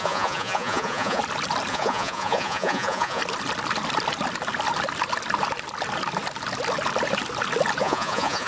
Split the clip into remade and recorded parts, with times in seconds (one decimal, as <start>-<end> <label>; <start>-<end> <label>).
0.0-1.2 remade; 1.2-1.7 recorded; 1.7-3.2 remade; 3.2-7.8 recorded; 7.8-8.5 remade